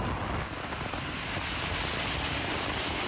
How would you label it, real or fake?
real